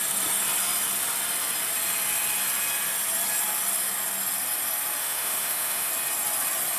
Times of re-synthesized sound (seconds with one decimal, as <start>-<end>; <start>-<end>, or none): 5.0-5.9